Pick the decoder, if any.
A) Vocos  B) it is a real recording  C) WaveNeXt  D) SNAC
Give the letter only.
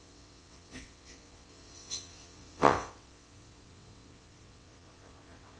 C